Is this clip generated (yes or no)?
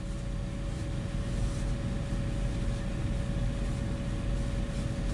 no